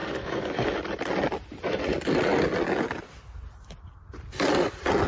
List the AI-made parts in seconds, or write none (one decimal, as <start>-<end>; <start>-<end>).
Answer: 0.0-0.7